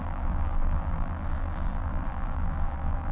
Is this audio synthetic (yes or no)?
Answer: yes